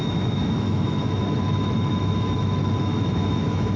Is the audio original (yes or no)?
no